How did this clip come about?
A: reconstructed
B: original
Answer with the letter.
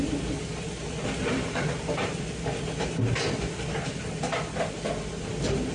B